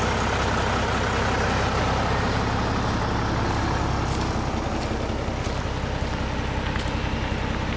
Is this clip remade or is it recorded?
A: recorded